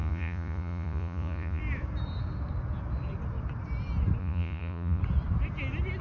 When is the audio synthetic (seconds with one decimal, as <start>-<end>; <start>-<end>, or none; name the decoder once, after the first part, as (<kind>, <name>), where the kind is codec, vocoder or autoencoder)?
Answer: 0.0-1.6 (vocoder, Vocos); 4.2-5.0

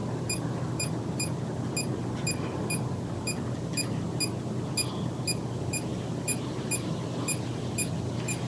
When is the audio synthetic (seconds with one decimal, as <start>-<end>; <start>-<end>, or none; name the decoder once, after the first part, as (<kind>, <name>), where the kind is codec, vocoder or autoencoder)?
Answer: none